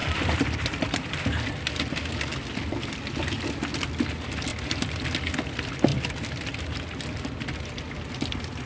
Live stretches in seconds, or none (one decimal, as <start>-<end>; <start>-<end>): 1.7-5.9; 7.0-8.7

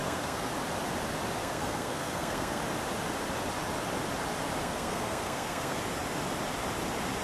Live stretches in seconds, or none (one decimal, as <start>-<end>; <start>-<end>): 0.5-1.4; 2.6-4.6; 5.8-7.2

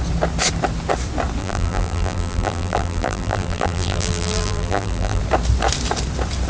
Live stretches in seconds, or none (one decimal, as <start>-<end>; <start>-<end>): 0.0-1.4; 5.2-6.5